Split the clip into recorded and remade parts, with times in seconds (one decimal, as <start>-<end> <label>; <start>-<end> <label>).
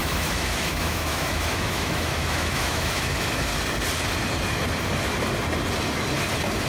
0.0-3.5 remade; 3.5-6.7 recorded